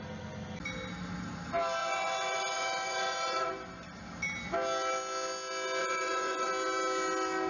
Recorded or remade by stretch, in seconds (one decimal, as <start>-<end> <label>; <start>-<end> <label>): 0.0-1.8 recorded; 1.8-3.5 remade; 3.5-5.8 recorded; 5.8-6.5 remade; 6.5-7.5 recorded